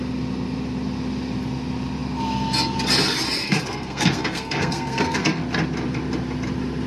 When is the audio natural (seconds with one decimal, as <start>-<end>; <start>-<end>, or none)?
0.0-3.4; 5.4-6.9